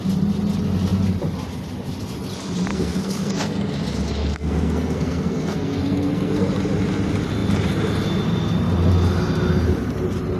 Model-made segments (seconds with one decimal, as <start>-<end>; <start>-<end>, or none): 2.7-3.7; 4.2-6.5

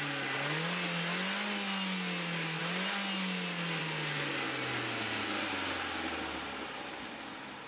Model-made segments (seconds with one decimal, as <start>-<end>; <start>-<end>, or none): none

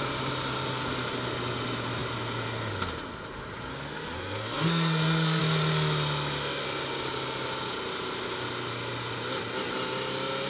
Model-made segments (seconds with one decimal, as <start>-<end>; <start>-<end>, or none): 3.7-5.4

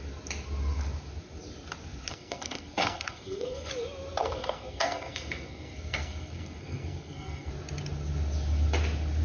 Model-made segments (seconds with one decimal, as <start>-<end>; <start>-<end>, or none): 2.1-3.7; 4.2-7.5

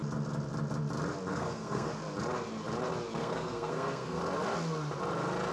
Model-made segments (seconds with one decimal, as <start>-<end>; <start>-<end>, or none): 1.3-1.9; 3.2-4.2

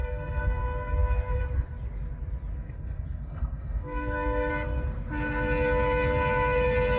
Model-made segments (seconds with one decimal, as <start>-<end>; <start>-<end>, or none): 0.0-1.4; 2.5-4.5

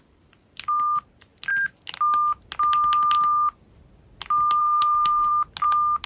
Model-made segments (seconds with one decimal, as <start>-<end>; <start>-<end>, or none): 4.6-5.3

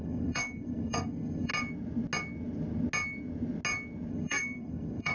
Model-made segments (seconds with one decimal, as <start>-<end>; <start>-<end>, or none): 0.0-1.5; 4.1-5.1